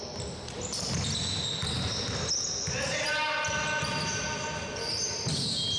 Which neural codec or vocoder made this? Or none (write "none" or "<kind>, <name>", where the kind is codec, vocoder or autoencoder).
none